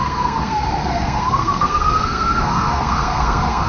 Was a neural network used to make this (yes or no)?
yes